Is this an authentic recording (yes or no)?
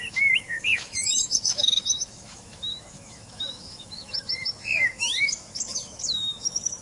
no